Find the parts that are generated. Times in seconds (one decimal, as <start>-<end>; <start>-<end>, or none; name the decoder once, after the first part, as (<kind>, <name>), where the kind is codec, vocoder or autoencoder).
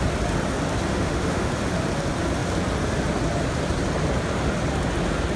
0.9-1.5 (autoencoder, DAC-VAE)